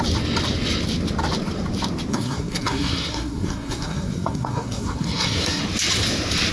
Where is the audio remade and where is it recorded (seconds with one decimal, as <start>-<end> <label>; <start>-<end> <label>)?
0.0-2.1 recorded; 2.1-5.6 remade; 5.6-6.5 recorded